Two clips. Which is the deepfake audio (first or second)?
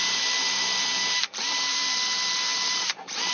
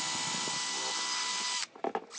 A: first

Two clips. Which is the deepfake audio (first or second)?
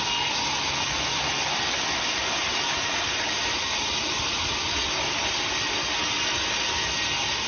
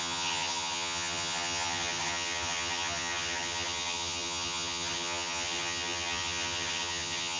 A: second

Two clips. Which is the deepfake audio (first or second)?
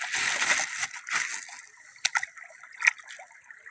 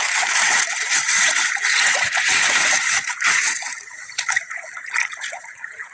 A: second